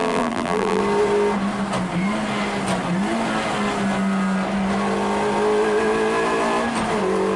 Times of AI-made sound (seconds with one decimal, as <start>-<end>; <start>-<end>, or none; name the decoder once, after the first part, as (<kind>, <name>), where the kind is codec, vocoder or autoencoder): 0.0-0.8 (vocoder, BigVGAN v2)